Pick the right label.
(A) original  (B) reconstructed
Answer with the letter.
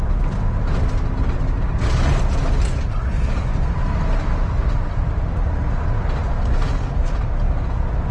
A